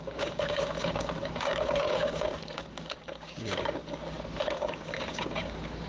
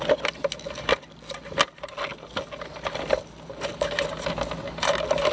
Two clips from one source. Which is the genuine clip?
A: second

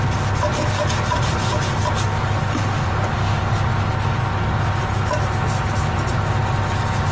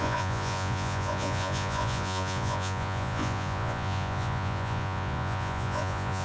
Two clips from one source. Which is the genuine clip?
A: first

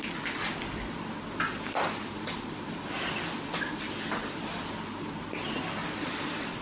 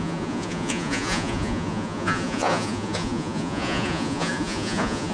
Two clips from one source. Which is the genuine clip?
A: first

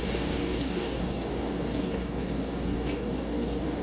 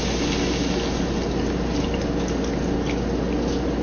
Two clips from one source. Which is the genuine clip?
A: second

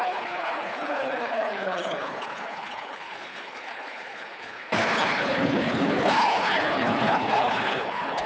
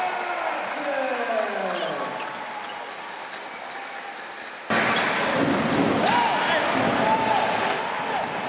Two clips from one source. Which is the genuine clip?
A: second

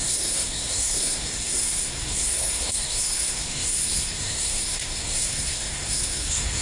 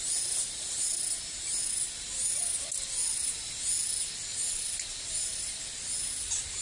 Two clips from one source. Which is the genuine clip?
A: second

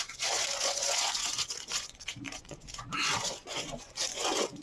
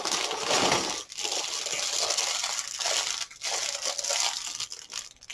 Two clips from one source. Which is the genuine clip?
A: second